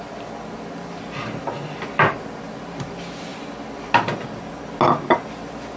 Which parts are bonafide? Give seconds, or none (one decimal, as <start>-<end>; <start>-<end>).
0.0-5.8